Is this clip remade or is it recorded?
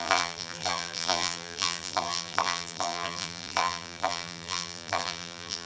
remade